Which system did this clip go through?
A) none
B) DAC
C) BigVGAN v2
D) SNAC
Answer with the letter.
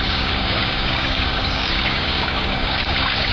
B